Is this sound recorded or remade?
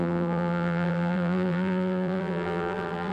remade